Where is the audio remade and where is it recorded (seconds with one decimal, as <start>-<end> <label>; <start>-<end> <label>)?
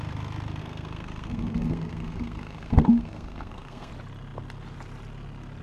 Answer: 0.0-0.6 recorded; 0.6-3.9 remade; 3.9-5.6 recorded